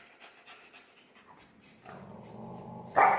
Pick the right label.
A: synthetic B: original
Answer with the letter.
B